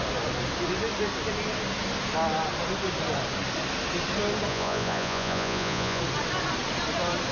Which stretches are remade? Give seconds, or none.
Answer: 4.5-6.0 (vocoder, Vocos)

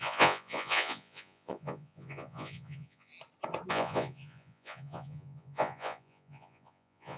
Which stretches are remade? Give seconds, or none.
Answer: 0.0-3.1 (vocoder, Vocos); 3.7-7.2